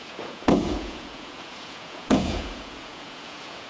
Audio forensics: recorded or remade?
remade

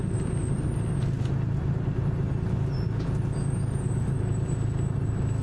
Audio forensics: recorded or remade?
recorded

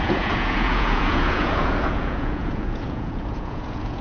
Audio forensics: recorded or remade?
remade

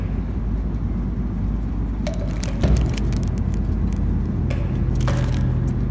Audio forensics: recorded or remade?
recorded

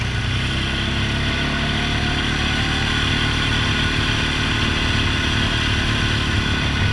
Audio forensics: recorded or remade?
recorded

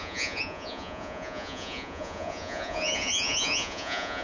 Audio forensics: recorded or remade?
remade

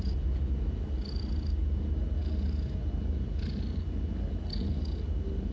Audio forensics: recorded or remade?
recorded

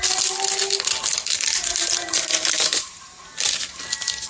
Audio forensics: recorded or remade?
recorded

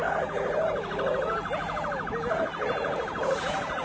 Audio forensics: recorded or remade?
recorded